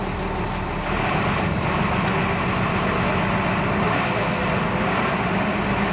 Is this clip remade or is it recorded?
recorded